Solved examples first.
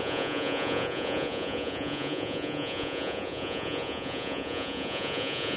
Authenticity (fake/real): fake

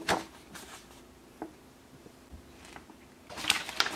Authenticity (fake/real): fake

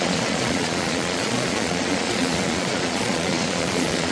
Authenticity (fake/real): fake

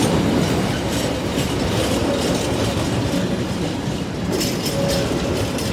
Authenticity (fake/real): real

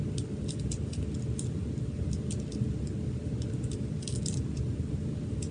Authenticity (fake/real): real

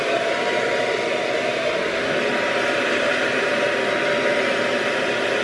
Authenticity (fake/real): real